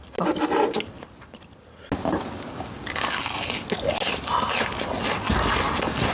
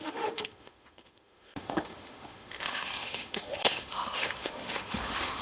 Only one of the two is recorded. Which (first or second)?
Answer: first